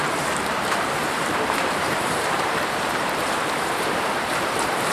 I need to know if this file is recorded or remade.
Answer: remade